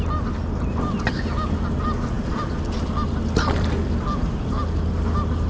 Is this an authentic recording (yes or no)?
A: yes